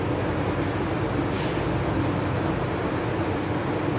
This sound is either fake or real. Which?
real